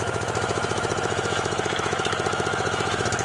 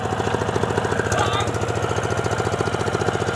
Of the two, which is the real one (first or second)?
second